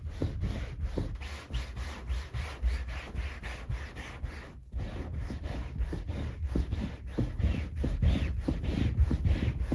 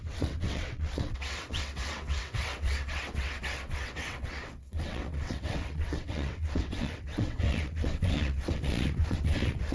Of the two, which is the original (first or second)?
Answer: first